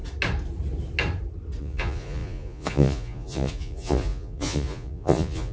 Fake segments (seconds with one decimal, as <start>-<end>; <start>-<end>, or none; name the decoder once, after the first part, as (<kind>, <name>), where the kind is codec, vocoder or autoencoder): 1.6-5.5 (vocoder, Vocos)